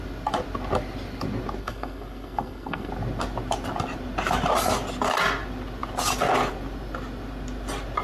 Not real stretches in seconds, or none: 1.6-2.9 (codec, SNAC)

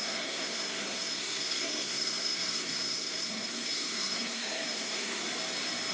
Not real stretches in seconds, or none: 0.0-5.2 (codec, SNAC)

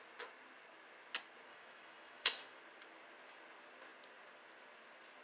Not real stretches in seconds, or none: 1.5-2.6 (autoencoder, DAC-VAE)

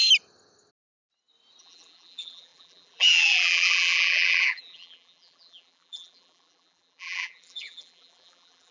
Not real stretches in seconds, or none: 1.6-8.7 (vocoder, BigVGAN v2)